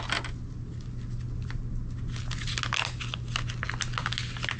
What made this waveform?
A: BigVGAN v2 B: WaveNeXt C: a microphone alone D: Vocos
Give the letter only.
C